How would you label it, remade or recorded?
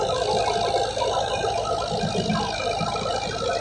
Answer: recorded